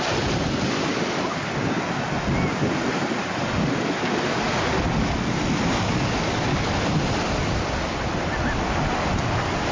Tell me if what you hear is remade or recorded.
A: recorded